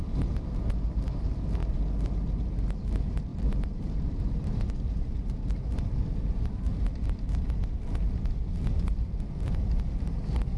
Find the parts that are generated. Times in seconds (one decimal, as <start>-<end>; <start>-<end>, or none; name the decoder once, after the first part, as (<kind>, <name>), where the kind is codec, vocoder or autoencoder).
3.3-4.2 (vocoder, BigVGAN v2)